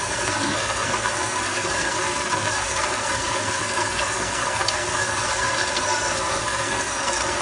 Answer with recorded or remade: remade